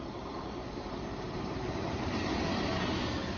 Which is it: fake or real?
real